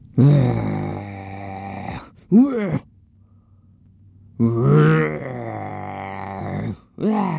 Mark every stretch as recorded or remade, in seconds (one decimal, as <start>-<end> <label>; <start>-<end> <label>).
0.0-7.4 recorded